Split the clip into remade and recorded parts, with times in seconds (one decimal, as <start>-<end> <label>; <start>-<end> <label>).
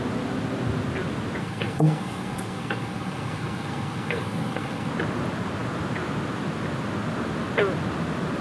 0.0-1.4 recorded; 1.4-4.9 remade; 4.9-8.4 recorded